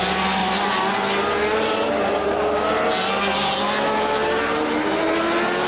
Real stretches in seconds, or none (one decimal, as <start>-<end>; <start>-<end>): 0.0-5.7